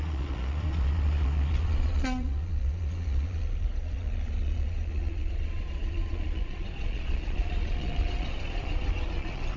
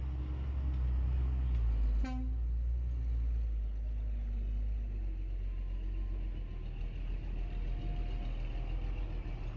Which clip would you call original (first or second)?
second